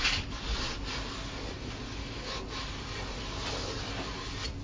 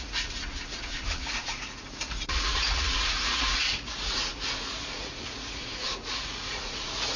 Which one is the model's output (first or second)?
second